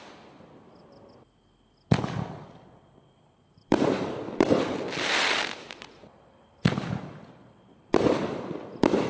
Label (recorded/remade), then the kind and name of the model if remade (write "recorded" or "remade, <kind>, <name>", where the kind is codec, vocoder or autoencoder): remade, vocoder, BigVGAN v2